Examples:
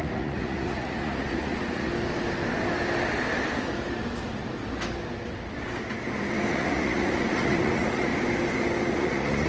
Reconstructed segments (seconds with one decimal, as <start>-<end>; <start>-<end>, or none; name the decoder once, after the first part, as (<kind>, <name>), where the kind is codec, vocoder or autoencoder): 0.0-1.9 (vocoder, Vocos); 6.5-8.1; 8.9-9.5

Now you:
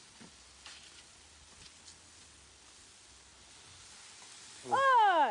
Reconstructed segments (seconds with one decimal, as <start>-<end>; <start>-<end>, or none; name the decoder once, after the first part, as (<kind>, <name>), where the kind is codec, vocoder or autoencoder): none

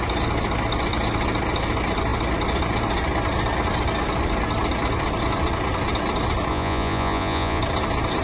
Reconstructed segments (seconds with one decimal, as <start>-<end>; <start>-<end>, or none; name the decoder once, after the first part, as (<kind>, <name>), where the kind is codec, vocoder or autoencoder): 6.5-7.6 (vocoder, Vocos)

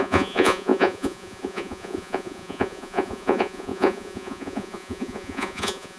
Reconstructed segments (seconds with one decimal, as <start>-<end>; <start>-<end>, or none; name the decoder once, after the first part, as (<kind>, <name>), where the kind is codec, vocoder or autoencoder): 0.0-6.0 (vocoder, Vocos)

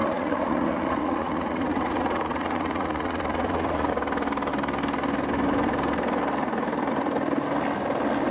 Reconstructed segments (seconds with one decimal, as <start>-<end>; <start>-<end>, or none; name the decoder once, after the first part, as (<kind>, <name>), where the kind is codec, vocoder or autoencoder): 0.0-3.9 (vocoder, Vocos)

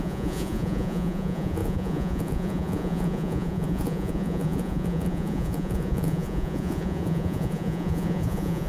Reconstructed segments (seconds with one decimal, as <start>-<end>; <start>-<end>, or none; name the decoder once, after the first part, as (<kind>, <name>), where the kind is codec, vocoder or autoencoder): 0.0-8.7 (vocoder, Vocos)

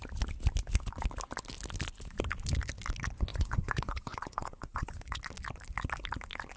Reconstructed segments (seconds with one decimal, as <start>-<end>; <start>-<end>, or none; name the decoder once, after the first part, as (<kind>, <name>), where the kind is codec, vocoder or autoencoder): 3.3-5.2 (vocoder, Vocos)